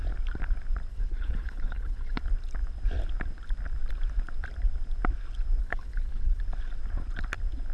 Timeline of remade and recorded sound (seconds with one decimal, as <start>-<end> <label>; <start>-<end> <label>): 0.0-0.9 recorded; 0.9-2.2 remade; 2.2-5.6 recorded; 5.6-6.4 remade; 6.4-7.7 recorded